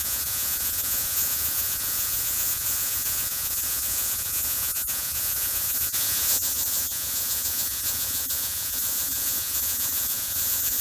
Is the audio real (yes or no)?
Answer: no